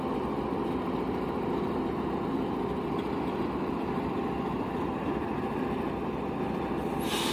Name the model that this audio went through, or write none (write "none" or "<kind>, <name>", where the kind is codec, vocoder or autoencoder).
none